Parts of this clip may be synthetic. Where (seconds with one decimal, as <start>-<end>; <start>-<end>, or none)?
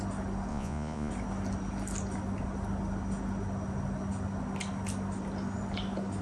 0.5-1.1